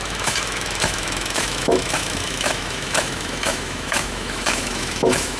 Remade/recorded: remade